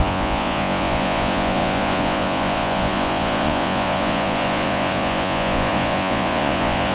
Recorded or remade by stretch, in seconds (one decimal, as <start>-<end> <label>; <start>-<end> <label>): 0.0-6.9 remade

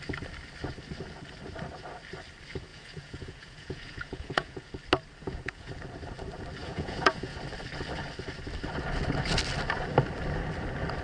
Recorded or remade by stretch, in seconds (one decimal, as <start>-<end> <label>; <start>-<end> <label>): 0.0-2.7 recorded; 2.7-4.7 remade; 4.7-5.2 recorded; 5.2-5.7 remade; 5.7-6.6 recorded; 6.6-7.4 remade; 7.4-11.0 recorded